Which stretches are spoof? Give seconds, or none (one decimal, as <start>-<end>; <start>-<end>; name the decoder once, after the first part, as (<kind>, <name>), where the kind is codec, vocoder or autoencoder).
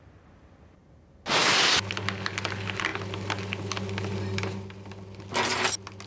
none